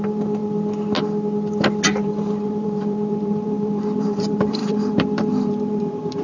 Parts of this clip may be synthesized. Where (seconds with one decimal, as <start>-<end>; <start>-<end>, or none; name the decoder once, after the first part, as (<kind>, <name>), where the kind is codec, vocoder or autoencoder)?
0.0-0.4 (vocoder, BigVGAN v2); 1.9-6.2